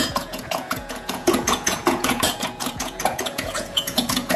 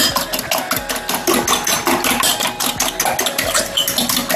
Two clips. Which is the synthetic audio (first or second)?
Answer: first